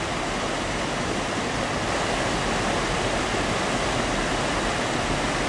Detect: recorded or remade recorded